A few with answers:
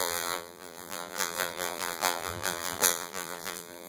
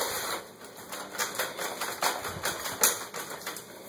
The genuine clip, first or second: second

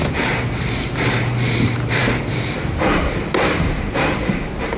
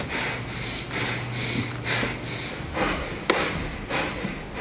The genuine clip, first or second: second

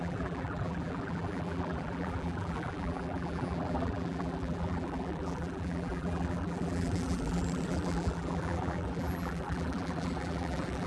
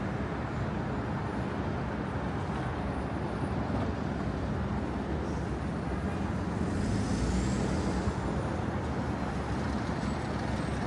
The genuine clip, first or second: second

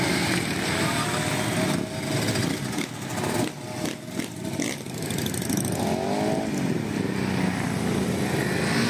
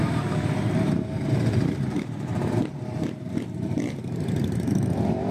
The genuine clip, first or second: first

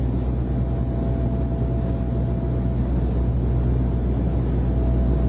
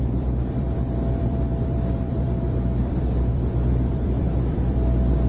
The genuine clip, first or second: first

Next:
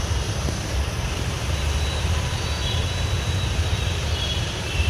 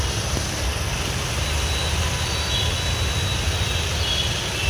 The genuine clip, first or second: second